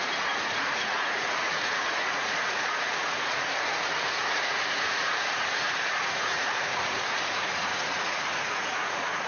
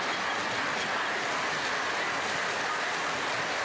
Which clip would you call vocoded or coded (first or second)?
first